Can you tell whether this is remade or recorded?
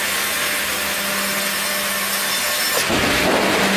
recorded